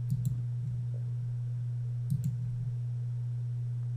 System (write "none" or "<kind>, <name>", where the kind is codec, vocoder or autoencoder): none